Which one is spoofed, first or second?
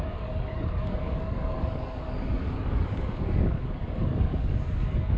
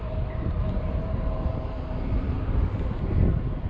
first